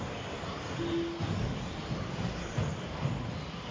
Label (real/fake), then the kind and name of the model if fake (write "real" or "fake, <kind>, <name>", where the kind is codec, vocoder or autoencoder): real